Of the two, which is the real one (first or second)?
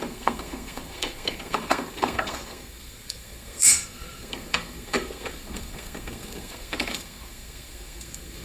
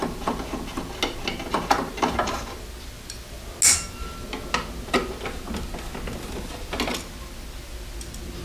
second